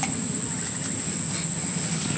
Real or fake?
real